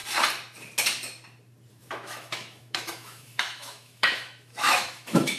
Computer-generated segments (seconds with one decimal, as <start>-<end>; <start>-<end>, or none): 1.7-5.4